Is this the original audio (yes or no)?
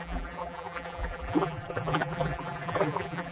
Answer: no